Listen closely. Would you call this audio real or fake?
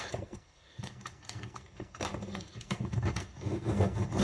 fake